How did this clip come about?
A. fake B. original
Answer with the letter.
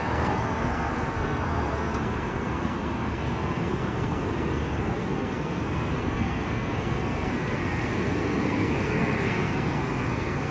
A